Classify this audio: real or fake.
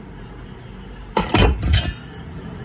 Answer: fake